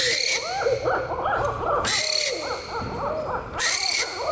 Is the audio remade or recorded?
recorded